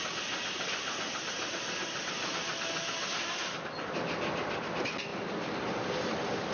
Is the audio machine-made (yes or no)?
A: no